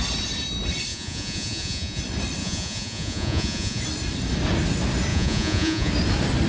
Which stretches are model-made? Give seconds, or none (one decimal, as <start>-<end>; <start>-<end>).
0.9-2.0; 2.4-3.8; 5.1-5.9